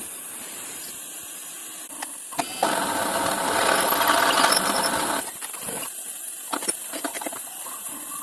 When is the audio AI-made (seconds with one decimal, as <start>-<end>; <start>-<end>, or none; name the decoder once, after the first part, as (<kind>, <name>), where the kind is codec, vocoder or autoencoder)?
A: 0.0-1.6 (vocoder, BigVGAN v2); 5.6-8.2

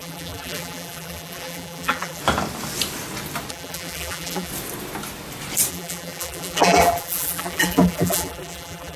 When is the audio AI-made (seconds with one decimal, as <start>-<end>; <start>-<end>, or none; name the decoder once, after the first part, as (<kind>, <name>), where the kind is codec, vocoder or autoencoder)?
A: 0.0-2.2 (vocoder, BigVGAN v2); 3.5-4.5; 5.7-9.0

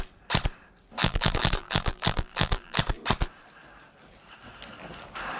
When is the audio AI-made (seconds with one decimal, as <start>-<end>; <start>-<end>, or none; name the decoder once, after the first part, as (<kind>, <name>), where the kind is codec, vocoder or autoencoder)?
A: 1.0-2.8 (vocoder, BigVGAN v2)

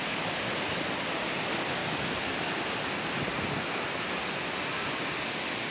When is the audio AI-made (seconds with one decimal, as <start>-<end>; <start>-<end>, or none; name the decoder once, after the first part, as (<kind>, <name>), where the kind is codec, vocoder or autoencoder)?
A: 3.3-4.6 (vocoder, BigVGAN v2)

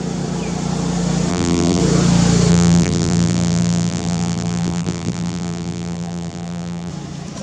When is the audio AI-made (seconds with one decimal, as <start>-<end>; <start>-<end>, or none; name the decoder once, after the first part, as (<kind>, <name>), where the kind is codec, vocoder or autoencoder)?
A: 1.3-1.8 (vocoder, BigVGAN v2); 2.5-6.9